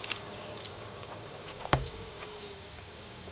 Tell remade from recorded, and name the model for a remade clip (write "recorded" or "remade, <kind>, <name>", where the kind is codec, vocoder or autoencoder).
remade, codec, DAC